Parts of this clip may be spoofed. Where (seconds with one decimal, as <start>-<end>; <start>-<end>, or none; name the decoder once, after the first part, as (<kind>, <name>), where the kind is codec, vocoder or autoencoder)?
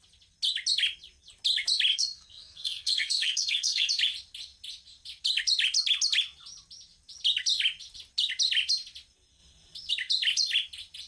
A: 1.9-3.9 (codec, SNAC)